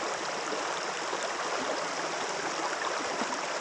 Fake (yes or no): yes